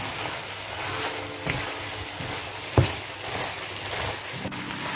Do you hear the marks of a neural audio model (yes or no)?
no